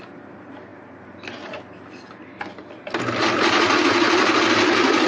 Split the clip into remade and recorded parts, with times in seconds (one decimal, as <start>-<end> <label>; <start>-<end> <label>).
0.0-5.1 recorded